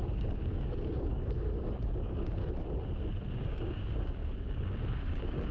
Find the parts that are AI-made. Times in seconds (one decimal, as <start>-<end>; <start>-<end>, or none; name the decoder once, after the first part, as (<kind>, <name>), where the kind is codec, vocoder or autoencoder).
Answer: 0.0-2.4 (codec, DAC); 3.3-5.5